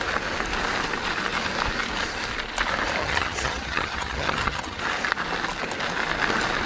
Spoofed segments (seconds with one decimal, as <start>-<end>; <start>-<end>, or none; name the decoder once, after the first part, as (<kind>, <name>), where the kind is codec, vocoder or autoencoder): 3.0-4.8 (vocoder, HiFi-GAN)